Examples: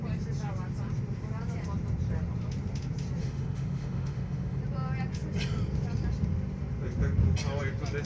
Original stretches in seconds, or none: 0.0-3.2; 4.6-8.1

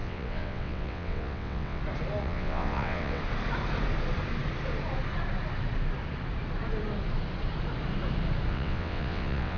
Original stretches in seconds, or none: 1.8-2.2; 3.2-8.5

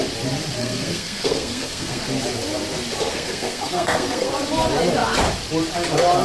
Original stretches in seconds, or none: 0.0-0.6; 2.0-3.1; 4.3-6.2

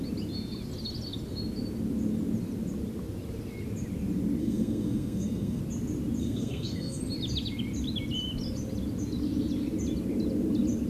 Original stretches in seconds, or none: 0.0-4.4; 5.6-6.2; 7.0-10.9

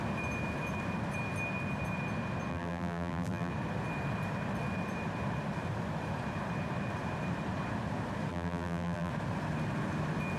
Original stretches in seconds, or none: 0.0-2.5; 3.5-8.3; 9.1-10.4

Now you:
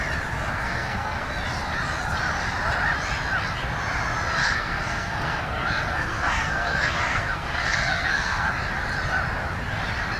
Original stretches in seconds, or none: 0.0-0.5; 1.3-4.4; 8.5-10.2

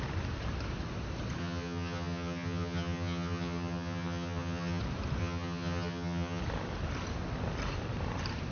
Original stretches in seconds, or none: 0.0-1.4; 4.8-5.2; 6.4-8.5

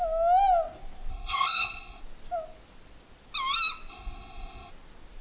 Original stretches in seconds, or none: 0.0-1.1; 2.0-3.9; 4.7-5.2